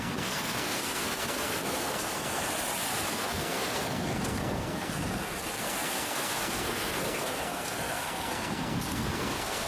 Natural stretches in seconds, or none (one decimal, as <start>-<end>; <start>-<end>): 2.4-3.1